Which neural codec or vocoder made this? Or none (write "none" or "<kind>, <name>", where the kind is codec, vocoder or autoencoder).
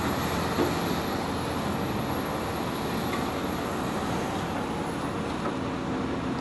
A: none